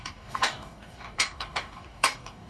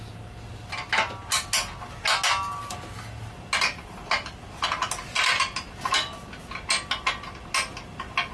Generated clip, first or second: first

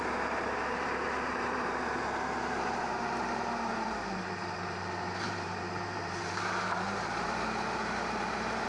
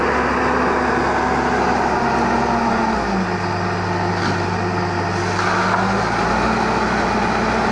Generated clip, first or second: first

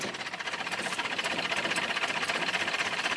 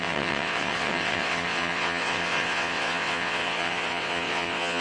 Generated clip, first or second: second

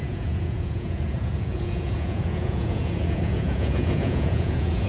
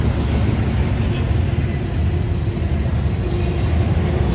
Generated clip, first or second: first